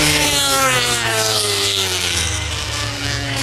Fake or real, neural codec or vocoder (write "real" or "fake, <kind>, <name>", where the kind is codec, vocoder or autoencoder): fake, codec, SNAC